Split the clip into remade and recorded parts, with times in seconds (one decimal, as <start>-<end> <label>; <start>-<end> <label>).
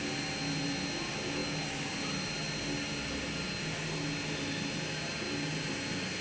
0.0-6.2 recorded